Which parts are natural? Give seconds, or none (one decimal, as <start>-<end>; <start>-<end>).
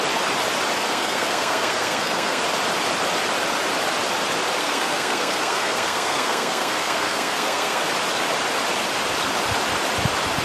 0.0-0.8; 2.4-4.6; 7.9-10.4